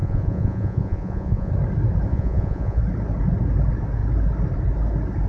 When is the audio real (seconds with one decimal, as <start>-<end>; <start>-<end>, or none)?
1.5-2.1; 2.8-5.3